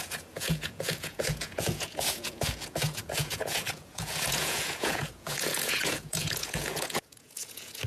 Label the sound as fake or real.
fake